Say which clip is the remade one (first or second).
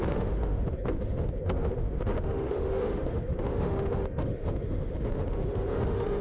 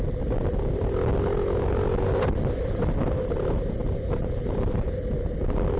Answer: first